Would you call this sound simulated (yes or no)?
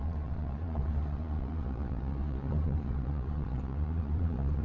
yes